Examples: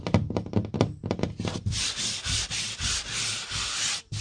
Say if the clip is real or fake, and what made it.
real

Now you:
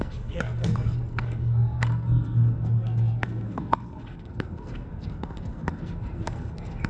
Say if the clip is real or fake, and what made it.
fake, codec, SNAC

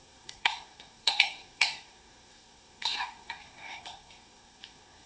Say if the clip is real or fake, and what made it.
fake, codec, SNAC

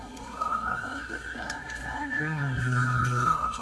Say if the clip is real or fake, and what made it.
fake, codec, SNAC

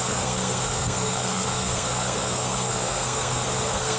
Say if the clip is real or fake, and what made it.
fake, codec, SNAC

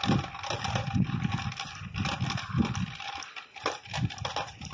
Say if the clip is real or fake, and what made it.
real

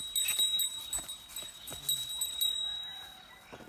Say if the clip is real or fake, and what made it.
real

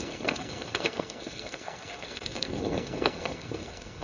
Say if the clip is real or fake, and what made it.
fake, codec, SNAC